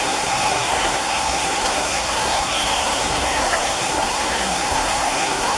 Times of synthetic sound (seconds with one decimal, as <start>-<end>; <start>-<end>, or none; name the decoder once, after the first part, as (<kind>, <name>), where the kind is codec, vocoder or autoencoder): 0.0-5.6 (codec, SNAC)